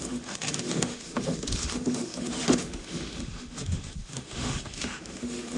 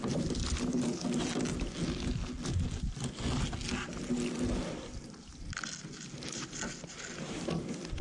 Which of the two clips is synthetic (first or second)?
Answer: first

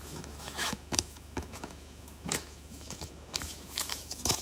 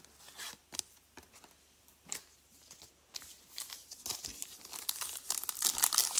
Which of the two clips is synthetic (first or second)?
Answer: first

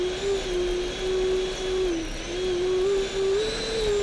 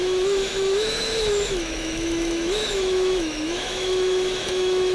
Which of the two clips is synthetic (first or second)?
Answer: second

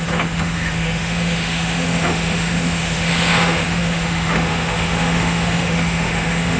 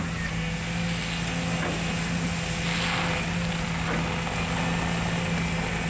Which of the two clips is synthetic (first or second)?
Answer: first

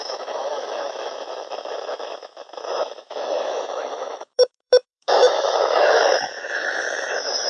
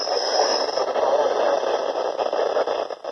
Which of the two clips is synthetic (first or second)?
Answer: first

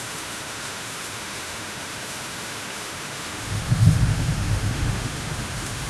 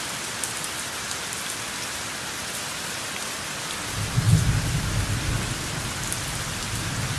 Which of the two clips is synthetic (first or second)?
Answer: first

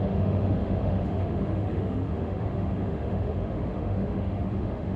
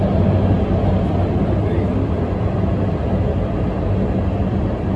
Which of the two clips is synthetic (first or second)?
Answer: first